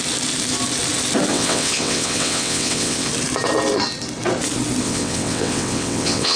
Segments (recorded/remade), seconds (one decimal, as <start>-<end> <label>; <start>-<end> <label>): 0.0-1.3 recorded; 1.3-3.1 remade; 3.1-4.8 recorded; 4.8-6.4 remade